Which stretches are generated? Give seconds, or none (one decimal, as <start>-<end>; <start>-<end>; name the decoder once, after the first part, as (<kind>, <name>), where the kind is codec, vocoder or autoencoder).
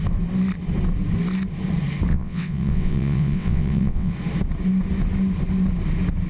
2.1-4.1 (vocoder, WaveNeXt)